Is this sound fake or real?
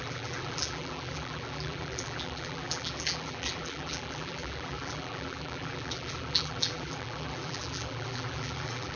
fake